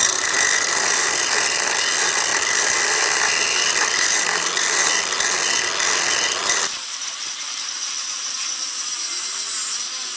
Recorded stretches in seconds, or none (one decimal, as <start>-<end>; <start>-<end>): 0.0-2.3; 4.2-6.4; 9.0-10.2